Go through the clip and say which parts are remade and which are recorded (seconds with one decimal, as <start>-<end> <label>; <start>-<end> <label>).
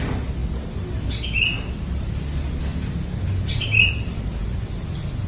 0.0-5.3 recorded